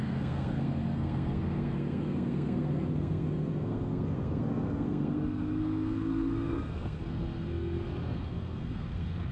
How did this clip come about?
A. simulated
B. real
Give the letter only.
A